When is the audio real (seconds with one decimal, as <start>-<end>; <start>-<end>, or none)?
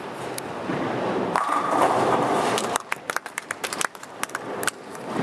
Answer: 0.0-0.7; 3.8-5.2